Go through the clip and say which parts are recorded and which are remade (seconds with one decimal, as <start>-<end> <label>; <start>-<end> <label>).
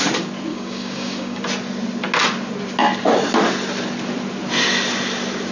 0.0-0.5 recorded; 0.5-1.4 remade; 1.4-5.5 recorded